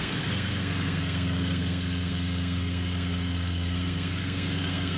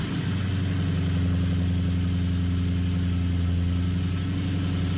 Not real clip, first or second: first